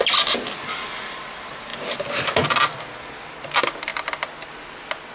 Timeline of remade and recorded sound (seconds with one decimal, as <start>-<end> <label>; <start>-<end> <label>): 0.0-5.1 recorded